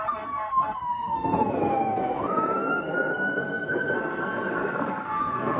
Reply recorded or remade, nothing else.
remade